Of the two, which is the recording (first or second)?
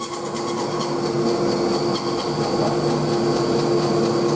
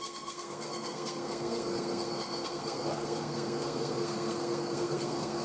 first